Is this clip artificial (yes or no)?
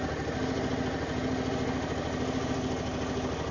no